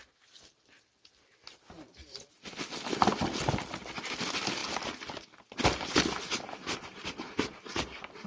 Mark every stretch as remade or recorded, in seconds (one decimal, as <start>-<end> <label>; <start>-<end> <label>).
0.0-8.3 recorded